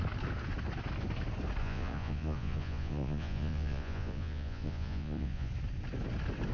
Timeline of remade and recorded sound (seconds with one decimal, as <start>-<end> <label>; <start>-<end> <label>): 0.0-1.6 recorded; 1.6-5.5 remade; 5.5-6.5 recorded